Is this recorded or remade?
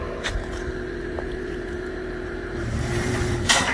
remade